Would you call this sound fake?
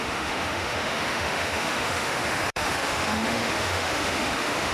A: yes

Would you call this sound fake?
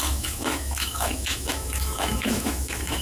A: yes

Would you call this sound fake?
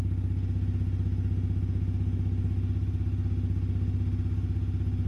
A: no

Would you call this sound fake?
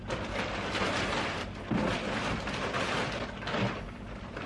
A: no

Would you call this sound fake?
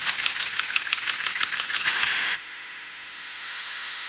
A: yes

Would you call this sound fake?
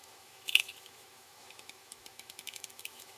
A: yes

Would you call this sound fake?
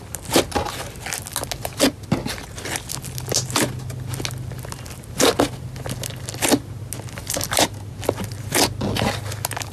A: no